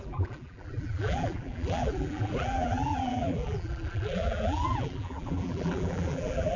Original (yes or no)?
no